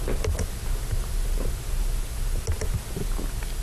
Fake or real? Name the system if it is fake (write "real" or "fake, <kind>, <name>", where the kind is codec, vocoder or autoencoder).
real